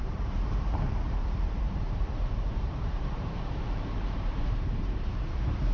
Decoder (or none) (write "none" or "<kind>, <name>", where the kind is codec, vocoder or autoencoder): vocoder, BigVGAN v2